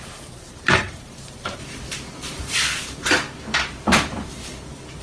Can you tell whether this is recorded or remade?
remade